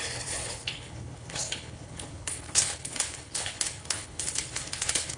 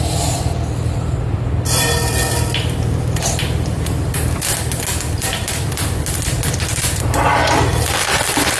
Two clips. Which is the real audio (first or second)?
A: second